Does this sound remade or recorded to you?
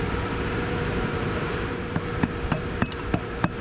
remade